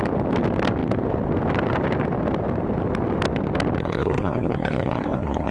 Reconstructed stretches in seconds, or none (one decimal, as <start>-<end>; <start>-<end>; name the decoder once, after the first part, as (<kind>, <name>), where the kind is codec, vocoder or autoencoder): 3.8-5.5 (codec, SNAC)